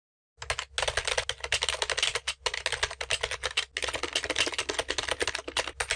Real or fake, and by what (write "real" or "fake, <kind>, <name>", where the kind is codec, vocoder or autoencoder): real